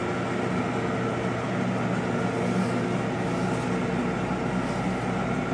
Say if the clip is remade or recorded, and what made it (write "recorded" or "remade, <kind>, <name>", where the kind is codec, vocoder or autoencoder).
recorded